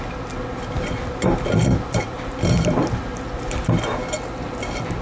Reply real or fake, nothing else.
real